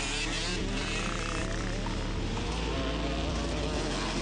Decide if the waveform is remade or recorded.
recorded